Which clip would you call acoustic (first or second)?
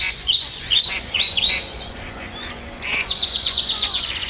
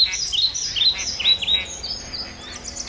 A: second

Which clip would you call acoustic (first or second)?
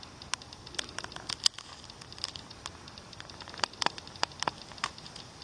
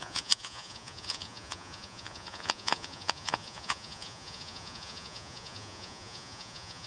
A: first